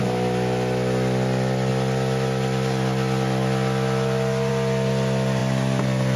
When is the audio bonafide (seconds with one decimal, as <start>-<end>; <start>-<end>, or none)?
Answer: 0.0-6.2

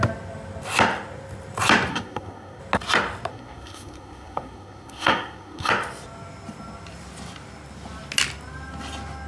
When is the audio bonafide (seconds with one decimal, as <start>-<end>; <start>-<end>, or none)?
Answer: 0.0-1.9; 2.6-3.3; 5.7-9.3

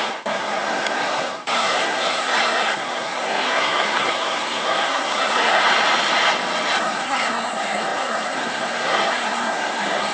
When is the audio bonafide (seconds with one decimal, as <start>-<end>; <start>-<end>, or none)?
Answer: 5.6-6.8

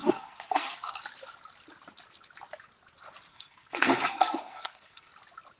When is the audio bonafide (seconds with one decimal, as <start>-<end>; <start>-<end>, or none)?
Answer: 1.0-3.3; 5.1-5.6

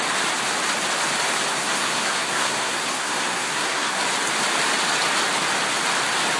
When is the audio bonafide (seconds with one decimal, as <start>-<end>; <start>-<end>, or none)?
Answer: 0.0-1.5; 4.0-6.4

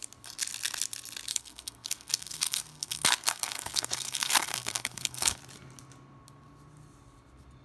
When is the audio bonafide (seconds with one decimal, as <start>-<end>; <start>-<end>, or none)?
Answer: 0.0-1.3; 5.4-7.6